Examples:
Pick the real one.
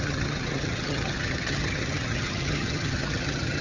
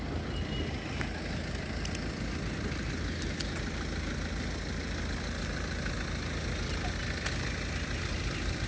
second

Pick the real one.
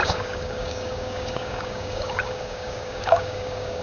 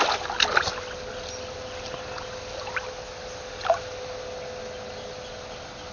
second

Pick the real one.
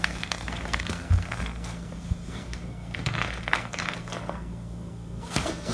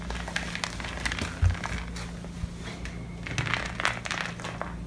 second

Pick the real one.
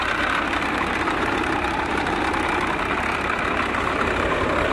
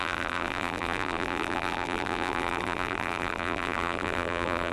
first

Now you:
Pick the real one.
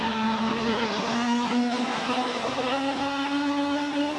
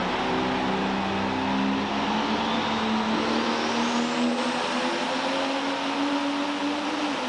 second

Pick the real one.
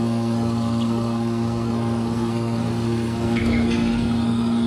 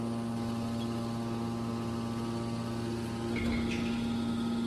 second